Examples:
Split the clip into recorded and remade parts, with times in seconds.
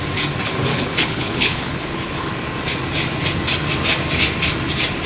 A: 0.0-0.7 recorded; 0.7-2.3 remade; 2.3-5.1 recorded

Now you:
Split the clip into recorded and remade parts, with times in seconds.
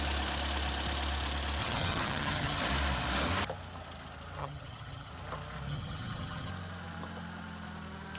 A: 0.0-1.6 recorded; 1.6-2.6 remade; 2.6-4.4 recorded; 4.4-5.1 remade; 5.1-5.7 recorded; 5.7-6.5 remade; 6.5-8.2 recorded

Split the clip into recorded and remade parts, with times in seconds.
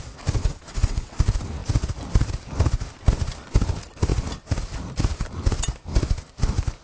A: 0.0-0.4 recorded; 0.4-1.1 remade; 1.1-6.8 recorded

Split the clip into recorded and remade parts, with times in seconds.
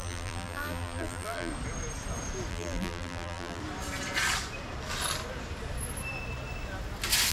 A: 0.0-1.5 remade; 1.5-2.5 recorded; 2.5-3.6 remade; 3.6-7.3 recorded